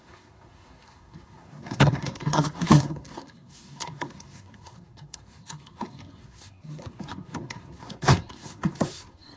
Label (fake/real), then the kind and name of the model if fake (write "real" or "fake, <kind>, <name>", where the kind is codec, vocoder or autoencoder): fake, codec, SNAC